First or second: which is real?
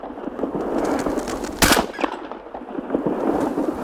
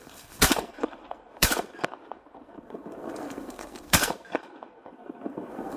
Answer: first